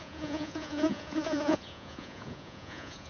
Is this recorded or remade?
remade